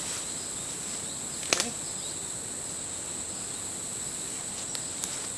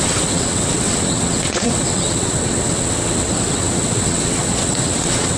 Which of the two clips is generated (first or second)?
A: second